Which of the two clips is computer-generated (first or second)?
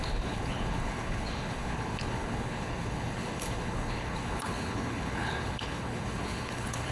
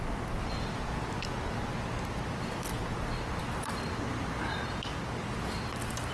first